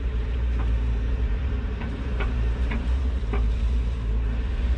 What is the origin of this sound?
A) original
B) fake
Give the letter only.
B